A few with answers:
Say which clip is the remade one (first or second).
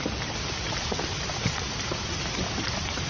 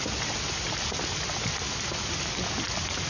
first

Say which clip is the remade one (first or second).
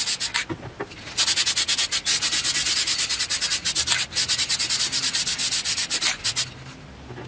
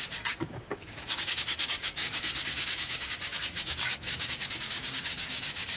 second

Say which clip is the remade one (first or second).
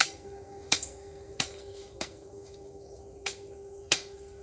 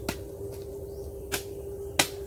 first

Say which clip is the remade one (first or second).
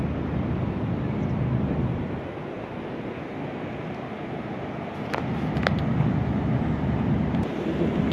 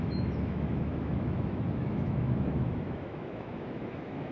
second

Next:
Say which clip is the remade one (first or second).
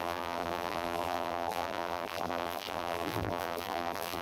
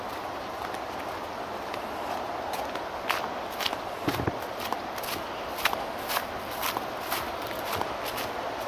first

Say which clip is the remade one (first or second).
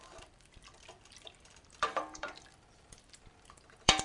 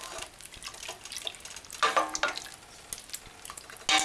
first